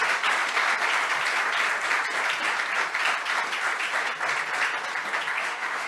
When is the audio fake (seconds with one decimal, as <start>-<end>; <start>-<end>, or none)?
5.4-5.9